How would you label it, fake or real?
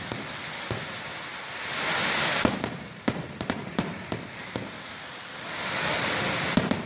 real